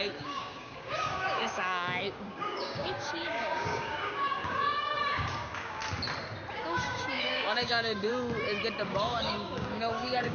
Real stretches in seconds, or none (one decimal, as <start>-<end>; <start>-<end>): 5.8-6.5; 8.1-8.8